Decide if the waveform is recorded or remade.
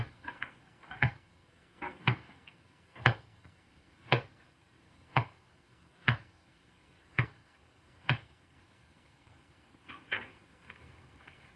remade